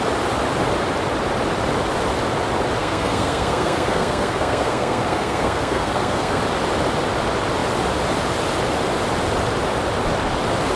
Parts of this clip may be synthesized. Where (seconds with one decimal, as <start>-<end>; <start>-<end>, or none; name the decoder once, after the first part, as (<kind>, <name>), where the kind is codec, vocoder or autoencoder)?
2.8-6.4 (codec, SNAC)

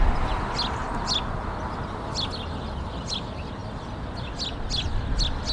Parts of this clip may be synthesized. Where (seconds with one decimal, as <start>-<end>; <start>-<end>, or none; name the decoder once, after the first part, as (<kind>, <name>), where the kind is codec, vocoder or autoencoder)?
none

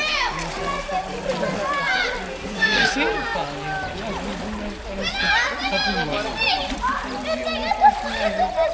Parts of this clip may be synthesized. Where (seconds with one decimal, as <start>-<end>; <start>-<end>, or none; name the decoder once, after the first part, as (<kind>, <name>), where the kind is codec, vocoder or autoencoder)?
2.3-2.9 (codec, SNAC)

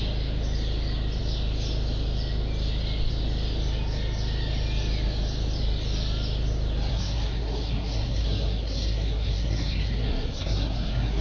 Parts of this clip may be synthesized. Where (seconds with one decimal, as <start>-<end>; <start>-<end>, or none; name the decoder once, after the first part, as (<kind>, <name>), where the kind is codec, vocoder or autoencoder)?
6.9-11.2 (codec, SNAC)

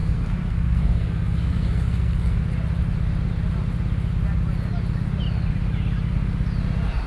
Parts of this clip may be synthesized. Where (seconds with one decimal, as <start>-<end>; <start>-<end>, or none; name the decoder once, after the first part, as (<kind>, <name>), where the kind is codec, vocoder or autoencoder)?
0.0-2.4 (codec, SNAC)

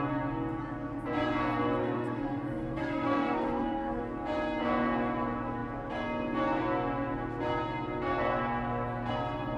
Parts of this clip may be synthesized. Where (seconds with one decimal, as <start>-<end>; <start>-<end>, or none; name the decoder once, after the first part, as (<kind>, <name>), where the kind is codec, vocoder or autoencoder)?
1.8-4.0 (codec, SNAC)

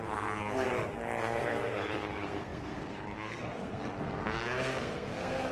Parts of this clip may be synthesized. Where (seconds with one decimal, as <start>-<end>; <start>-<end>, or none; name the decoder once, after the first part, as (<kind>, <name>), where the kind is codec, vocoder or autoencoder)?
0.0-0.7 (codec, SNAC); 1.2-5.5

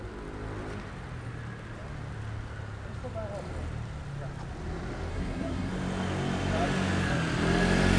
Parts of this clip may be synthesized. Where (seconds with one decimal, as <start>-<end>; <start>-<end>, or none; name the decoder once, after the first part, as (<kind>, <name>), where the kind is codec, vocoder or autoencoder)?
5.1-5.7 (codec, SNAC)